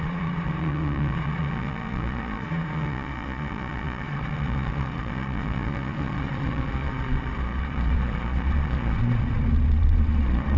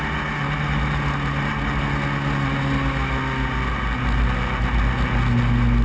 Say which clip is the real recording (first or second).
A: second